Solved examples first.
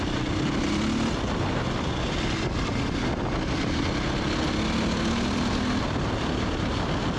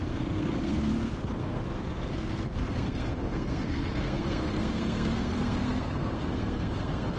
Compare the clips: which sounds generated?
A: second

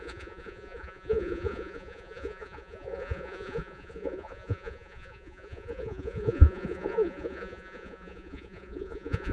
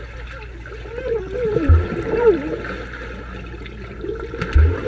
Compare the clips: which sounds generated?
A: first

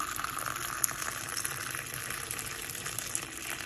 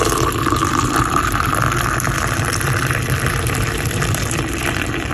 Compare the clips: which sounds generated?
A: second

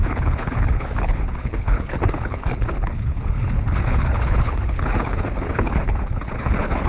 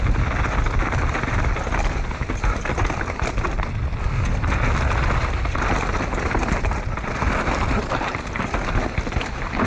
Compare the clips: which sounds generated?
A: first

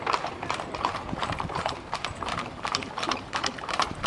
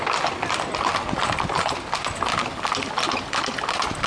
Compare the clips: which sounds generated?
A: first